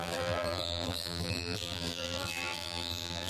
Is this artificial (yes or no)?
yes